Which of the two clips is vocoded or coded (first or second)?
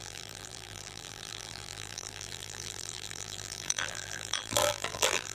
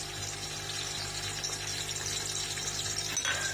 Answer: first